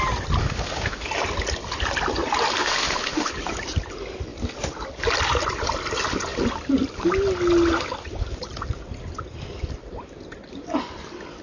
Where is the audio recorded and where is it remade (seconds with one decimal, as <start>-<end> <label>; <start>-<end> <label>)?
0.0-0.4 recorded; 0.4-1.1 remade; 1.1-2.6 recorded; 2.6-3.3 remade; 3.3-11.4 recorded